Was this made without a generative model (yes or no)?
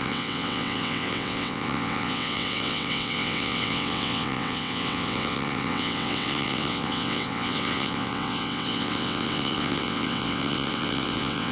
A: no